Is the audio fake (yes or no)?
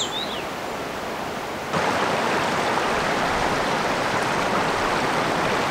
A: no